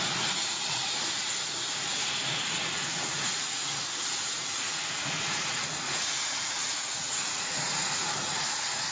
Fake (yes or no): yes